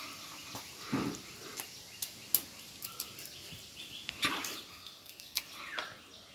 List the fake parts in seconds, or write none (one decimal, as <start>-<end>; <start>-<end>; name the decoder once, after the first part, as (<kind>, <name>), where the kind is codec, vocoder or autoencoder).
4.7-5.4 (codec, SNAC)